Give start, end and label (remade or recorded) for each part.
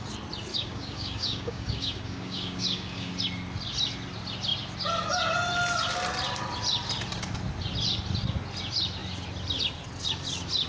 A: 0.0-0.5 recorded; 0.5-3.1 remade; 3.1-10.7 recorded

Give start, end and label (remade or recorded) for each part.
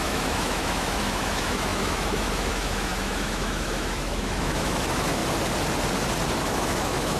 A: 0.0-5.2 remade; 5.2-6.4 recorded; 6.4-7.2 remade